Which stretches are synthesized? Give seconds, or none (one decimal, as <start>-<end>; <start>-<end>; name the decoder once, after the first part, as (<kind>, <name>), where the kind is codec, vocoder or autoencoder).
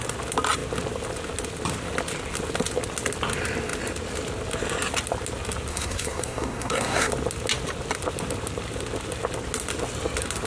5.7-7.1 (codec, SNAC)